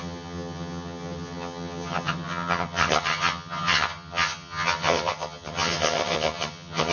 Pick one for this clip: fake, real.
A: fake